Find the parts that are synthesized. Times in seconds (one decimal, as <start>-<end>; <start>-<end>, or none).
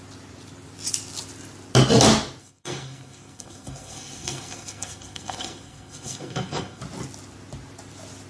2.4-6.8